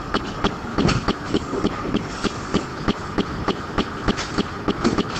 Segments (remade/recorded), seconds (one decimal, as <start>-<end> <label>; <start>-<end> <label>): 0.0-0.7 remade; 0.7-1.3 recorded; 1.3-2.7 remade; 2.7-5.2 recorded